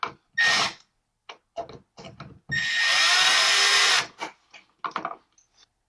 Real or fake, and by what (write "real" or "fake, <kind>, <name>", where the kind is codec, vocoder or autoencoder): real